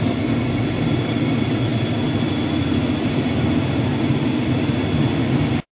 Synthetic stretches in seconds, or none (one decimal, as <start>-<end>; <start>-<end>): none